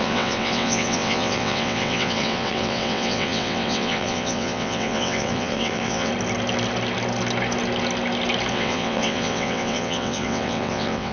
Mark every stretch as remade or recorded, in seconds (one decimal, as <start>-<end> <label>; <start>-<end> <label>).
0.0-6.1 remade; 6.1-8.5 recorded; 8.5-11.1 remade